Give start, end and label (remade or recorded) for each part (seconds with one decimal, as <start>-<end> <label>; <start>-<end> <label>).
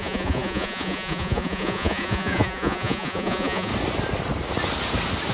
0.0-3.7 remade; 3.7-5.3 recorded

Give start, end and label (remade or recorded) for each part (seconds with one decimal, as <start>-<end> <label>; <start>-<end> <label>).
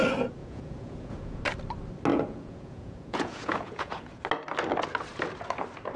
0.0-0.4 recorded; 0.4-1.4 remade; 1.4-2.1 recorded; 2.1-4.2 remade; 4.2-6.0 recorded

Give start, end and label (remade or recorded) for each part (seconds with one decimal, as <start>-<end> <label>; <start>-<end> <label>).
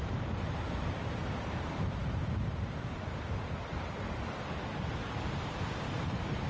0.0-6.5 recorded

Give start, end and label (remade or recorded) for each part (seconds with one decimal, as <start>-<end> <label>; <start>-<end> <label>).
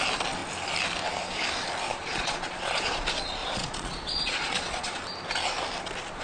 0.0-1.9 recorded; 1.9-3.0 remade; 3.0-3.4 recorded; 3.4-5.0 remade; 5.0-6.2 recorded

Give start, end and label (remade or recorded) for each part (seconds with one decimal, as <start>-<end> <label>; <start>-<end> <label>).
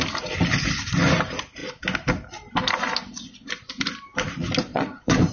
0.0-4.7 recorded; 4.7-5.3 remade